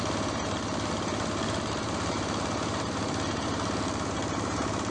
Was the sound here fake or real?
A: fake